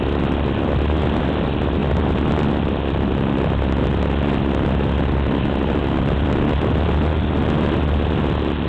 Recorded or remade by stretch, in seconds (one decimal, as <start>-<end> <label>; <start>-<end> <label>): 0.0-8.7 recorded